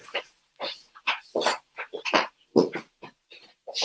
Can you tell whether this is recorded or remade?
remade